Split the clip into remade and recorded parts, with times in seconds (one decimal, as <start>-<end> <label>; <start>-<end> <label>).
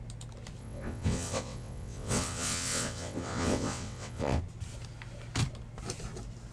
0.0-0.6 recorded; 0.6-4.4 remade; 4.4-6.5 recorded